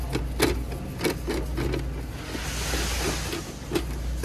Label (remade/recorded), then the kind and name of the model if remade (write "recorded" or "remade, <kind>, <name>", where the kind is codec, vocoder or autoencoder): recorded